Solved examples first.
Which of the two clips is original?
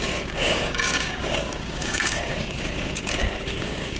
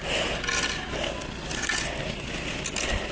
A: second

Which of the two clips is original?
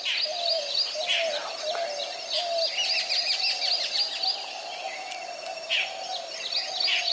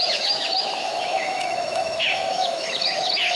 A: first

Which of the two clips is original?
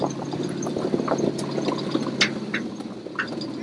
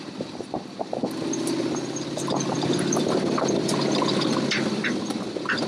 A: first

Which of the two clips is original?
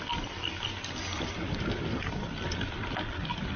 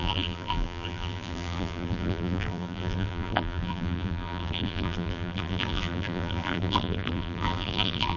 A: first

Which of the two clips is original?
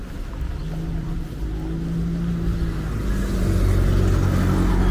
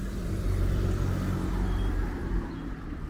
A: first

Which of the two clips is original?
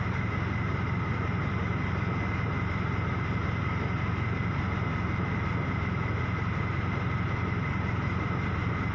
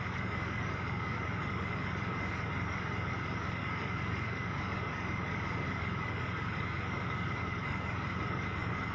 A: first